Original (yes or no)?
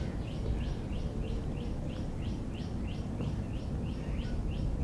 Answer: yes